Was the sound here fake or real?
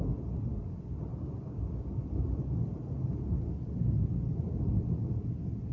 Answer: real